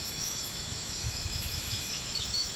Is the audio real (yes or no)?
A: no